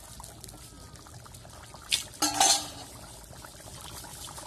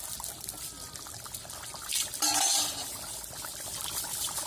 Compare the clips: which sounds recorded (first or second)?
first